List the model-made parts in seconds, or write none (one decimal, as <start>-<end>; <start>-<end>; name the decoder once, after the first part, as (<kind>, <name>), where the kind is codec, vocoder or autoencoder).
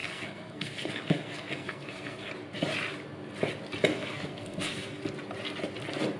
0.0-2.3 (codec, SNAC); 3.9-5.0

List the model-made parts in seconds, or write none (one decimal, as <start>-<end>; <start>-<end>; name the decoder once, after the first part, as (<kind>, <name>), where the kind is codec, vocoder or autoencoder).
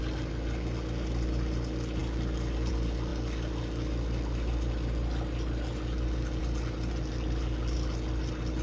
none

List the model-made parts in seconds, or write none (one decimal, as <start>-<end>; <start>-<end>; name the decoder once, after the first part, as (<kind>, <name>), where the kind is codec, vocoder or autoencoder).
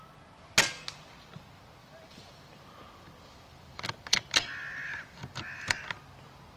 1.8-5.8 (vocoder, BigVGAN v2)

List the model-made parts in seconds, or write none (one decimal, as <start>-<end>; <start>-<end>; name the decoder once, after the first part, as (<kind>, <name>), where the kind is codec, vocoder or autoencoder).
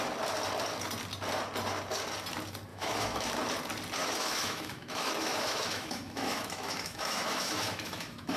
2.7-3.3 (autoencoder, DAC-VAE); 4.0-8.4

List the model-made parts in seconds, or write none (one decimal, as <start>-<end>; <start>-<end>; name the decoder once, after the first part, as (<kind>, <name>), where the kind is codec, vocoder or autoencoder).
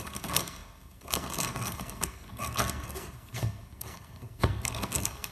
0.0-5.3 (codec, SNAC)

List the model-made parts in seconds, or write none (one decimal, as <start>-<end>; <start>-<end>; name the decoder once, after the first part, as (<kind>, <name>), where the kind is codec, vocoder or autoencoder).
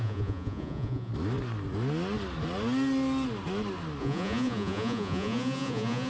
0.0-1.1 (vocoder, Vocos); 4.0-6.1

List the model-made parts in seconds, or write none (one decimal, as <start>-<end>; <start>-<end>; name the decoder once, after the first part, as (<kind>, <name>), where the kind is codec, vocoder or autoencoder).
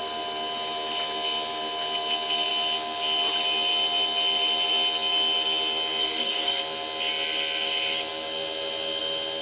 6.0-6.6 (codec, SNAC)